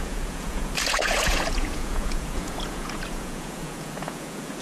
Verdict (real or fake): fake